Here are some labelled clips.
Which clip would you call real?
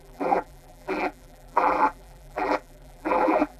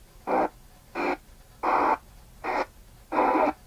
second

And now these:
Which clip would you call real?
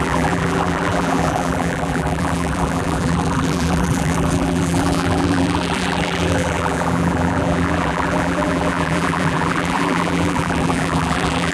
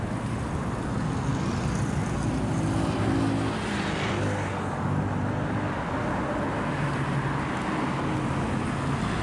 second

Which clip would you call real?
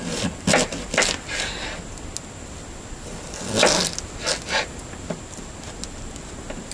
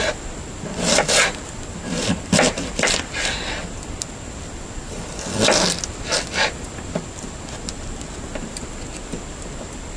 first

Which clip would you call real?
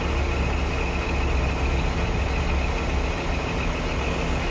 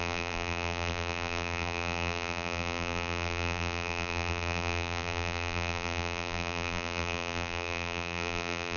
first